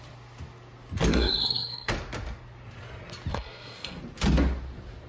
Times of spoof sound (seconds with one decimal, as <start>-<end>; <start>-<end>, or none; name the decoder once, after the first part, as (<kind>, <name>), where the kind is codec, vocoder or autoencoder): 1.1-1.9 (codec, SNAC); 3.3-4.0